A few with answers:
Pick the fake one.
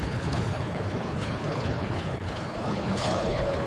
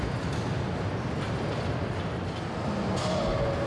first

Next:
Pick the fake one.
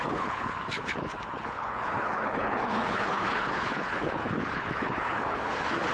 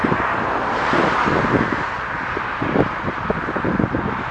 first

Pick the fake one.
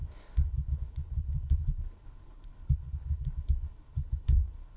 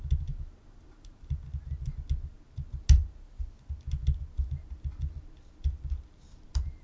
first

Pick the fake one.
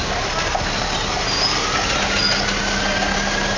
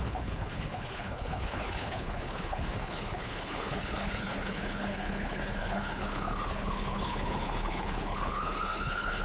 second